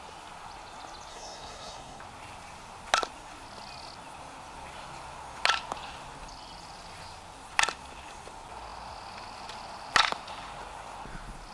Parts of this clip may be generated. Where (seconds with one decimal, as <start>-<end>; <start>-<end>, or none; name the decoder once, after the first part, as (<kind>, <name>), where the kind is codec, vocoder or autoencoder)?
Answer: 1.1-2.0 (codec, SNAC)